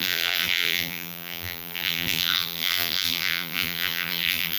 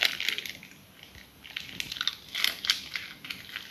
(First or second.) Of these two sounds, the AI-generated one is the first